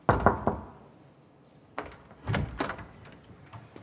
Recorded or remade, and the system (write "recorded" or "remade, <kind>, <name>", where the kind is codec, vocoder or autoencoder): recorded